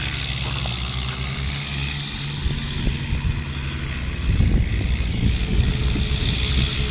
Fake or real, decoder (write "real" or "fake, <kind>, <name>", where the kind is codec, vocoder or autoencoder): real